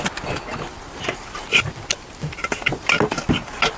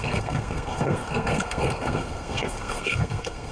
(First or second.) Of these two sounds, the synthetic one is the second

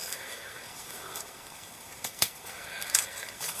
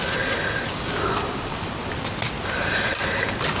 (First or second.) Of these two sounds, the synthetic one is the first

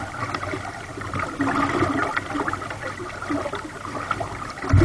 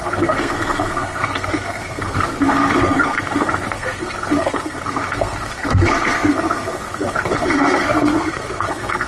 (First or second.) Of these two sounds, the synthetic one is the second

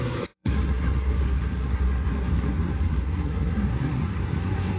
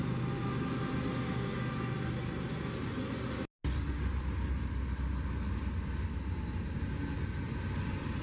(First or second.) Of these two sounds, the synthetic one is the first